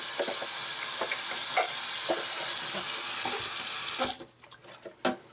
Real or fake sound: real